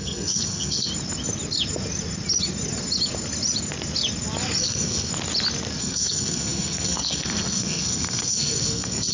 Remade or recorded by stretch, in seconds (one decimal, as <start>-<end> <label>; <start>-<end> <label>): 0.0-0.9 remade; 0.9-4.6 recorded; 4.6-5.1 remade; 5.1-5.8 recorded; 5.8-9.1 remade